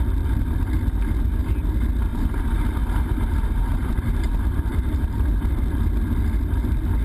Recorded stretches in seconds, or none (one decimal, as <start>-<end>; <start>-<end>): 0.0-2.1; 4.3-4.7; 5.5-7.0